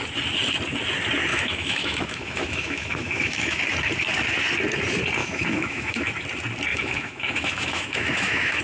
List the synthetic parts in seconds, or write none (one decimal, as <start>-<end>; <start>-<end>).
1.3-3.6; 5.2-6.0; 6.7-8.6